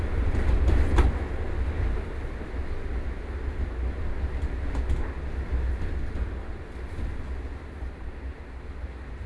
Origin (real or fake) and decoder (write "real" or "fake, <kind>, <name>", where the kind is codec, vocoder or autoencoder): real